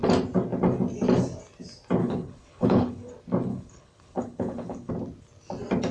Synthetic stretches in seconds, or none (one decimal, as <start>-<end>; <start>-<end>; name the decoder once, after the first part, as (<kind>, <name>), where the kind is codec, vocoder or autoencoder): 2.0-3.1 (codec, HILCodec); 3.5-4.9